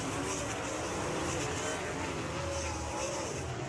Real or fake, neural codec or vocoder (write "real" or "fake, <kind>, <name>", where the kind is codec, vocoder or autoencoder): real